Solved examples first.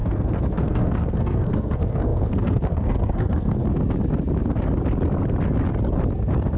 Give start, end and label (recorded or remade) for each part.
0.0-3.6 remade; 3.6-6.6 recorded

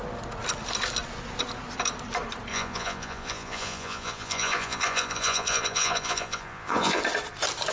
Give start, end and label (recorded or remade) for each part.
0.0-2.5 recorded; 2.5-7.0 remade; 7.0-7.7 recorded